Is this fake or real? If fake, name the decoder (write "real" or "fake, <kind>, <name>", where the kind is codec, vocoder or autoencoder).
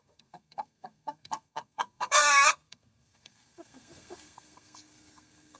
fake, codec, SNAC